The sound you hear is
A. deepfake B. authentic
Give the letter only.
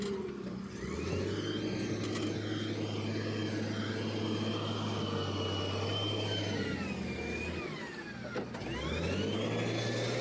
B